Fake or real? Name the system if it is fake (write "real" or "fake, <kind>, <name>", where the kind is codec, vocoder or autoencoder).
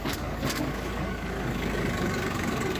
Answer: fake, codec, DAC